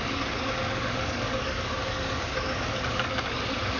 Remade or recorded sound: remade